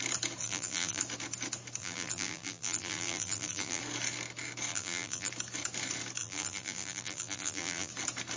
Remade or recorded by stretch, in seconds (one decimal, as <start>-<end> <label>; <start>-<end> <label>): 0.0-0.4 recorded; 0.4-1.0 remade; 1.0-1.8 recorded; 1.8-3.8 remade; 3.8-4.7 recorded; 4.7-5.3 remade; 5.3-6.2 recorded; 6.2-7.9 remade; 7.9-8.4 recorded